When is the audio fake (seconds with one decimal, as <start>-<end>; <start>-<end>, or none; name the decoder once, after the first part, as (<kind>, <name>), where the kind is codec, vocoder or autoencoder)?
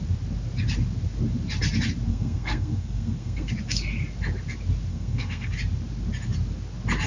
2.1-3.5 (codec, SNAC); 4.9-5.5